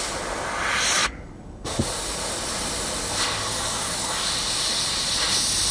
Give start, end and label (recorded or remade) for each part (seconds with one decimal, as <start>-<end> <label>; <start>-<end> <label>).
0.0-1.0 recorded; 1.0-1.8 remade; 1.8-3.5 recorded; 3.5-4.3 remade; 4.3-5.7 recorded